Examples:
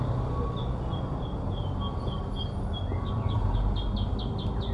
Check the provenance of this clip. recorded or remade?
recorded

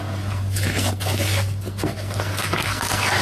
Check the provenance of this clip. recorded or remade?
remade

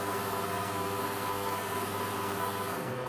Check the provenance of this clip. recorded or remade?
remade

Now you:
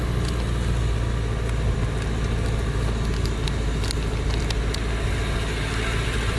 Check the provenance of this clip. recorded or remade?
recorded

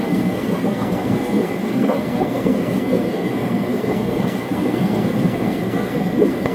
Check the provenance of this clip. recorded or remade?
remade